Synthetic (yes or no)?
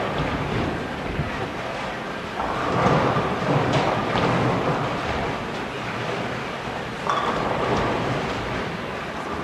yes